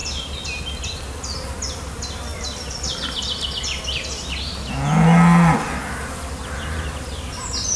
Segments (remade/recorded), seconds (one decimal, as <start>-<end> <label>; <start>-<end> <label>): 0.0-7.8 recorded